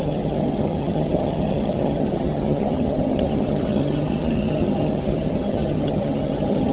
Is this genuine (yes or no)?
no